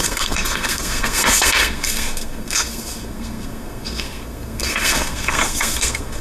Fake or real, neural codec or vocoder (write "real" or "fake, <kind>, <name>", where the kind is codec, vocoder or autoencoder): fake, codec, SNAC